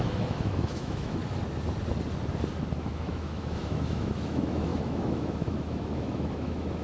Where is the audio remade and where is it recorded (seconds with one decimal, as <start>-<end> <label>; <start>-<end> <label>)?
0.0-1.2 remade; 1.2-2.8 recorded; 2.8-6.8 remade